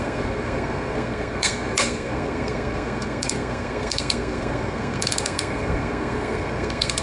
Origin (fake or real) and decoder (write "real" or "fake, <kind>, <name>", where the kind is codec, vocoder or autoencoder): fake, codec, SNAC